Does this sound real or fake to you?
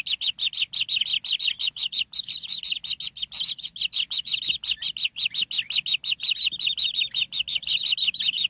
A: real